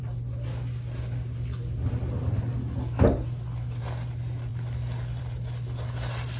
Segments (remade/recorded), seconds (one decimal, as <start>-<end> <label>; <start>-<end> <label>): 0.0-6.4 recorded

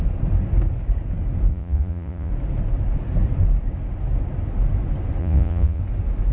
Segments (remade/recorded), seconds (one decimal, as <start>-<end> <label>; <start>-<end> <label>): 0.0-1.5 recorded; 1.5-2.3 remade; 2.3-5.2 recorded; 5.2-5.8 remade; 5.8-6.3 recorded

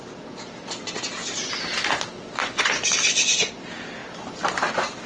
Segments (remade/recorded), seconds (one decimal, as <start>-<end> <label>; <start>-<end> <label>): 0.0-2.4 recorded; 2.4-3.5 remade; 3.5-5.1 recorded

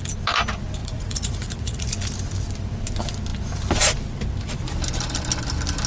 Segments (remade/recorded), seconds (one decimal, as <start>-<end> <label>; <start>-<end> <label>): 0.0-0.8 recorded; 0.8-1.9 remade; 1.9-5.9 recorded

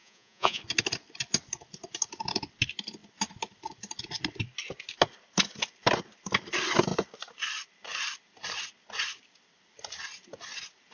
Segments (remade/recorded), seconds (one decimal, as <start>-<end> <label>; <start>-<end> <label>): 0.0-0.6 remade; 0.6-10.9 recorded

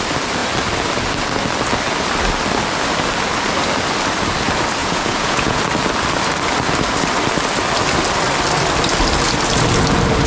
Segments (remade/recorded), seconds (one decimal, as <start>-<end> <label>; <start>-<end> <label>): 0.0-4.8 recorded; 4.8-5.6 remade; 5.6-10.3 recorded